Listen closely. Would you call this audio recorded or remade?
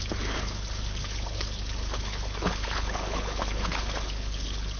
remade